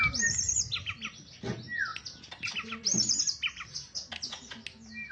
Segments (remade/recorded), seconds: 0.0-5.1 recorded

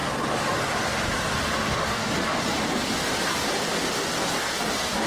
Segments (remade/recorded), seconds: 0.0-1.6 recorded; 1.6-2.1 remade; 2.1-5.1 recorded

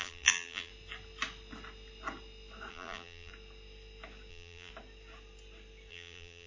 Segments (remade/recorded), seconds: 0.0-0.7 remade; 0.7-2.7 recorded; 2.7-3.3 remade; 3.3-4.3 recorded; 4.3-4.7 remade; 4.7-5.9 recorded; 5.9-6.5 remade

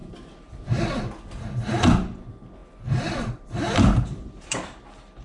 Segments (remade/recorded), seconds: 0.0-5.2 remade

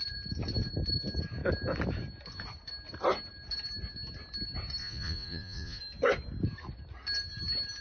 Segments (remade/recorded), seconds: 0.0-4.8 recorded; 4.8-5.8 remade; 5.8-7.8 recorded